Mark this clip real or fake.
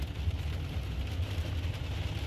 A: real